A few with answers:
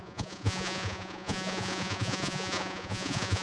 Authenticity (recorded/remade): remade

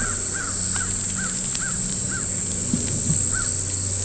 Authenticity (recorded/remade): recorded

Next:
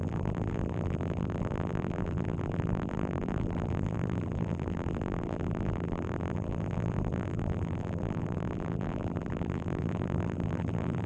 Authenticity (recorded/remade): remade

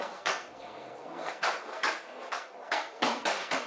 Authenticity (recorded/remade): remade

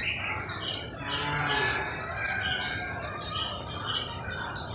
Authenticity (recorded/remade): recorded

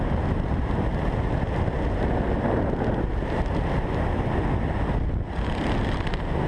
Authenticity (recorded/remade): recorded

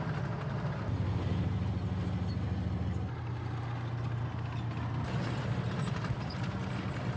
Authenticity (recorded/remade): recorded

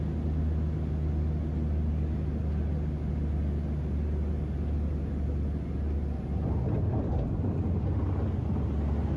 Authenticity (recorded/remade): recorded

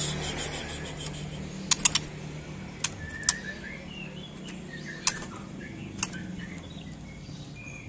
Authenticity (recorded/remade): recorded